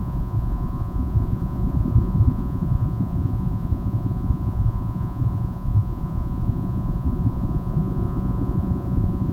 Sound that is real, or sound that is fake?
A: fake